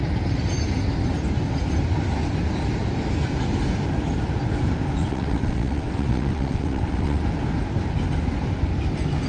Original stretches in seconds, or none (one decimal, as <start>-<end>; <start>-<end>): 0.0-5.0; 7.2-9.3